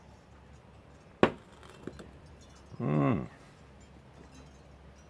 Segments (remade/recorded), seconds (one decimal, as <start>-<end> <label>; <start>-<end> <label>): 0.0-5.1 recorded